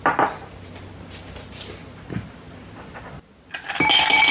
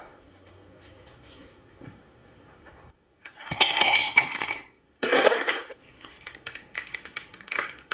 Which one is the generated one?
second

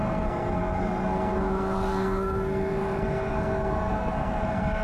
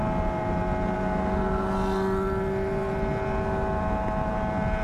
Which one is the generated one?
first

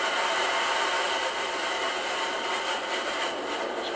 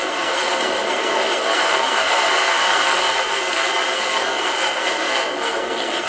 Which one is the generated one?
second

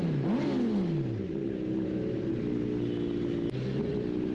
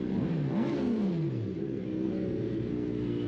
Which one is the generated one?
second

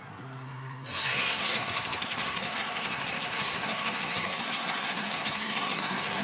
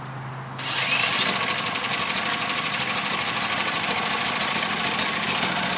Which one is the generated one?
first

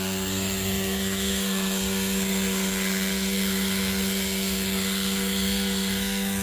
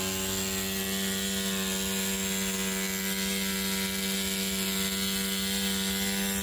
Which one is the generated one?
first